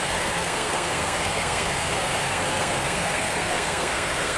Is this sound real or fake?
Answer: fake